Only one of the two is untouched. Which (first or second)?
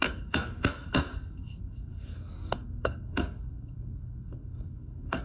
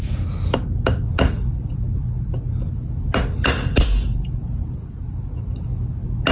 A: second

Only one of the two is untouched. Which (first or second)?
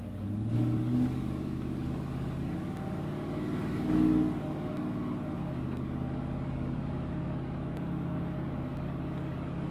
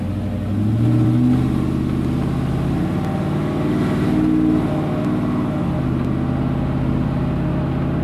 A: second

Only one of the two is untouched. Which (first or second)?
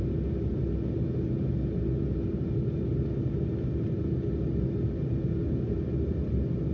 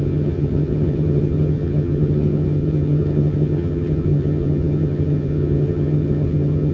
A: first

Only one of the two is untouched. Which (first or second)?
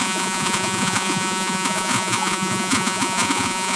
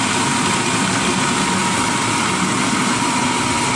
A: second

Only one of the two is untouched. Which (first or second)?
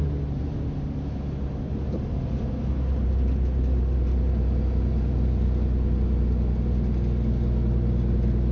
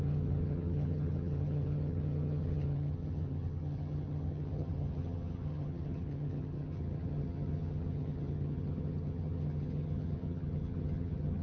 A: first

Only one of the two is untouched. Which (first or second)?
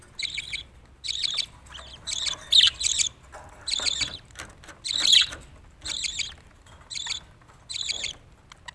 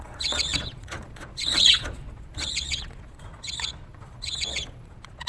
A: first